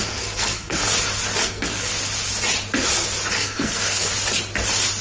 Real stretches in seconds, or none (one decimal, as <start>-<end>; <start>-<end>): 0.8-1.4; 1.9-3.3; 4.1-5.0